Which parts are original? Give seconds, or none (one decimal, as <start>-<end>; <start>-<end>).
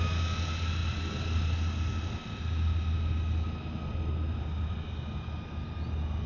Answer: 0.0-6.3